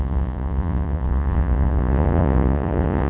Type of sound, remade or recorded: remade